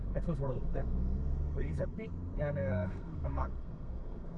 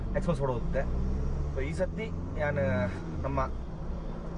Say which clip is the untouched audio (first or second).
second